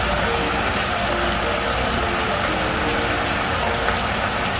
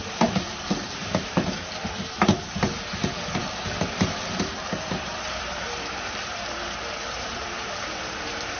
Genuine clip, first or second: first